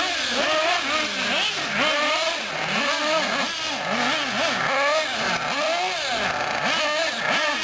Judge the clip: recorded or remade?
recorded